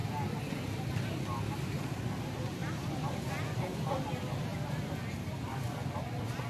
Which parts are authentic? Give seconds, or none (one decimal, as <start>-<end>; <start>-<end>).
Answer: 0.0-6.5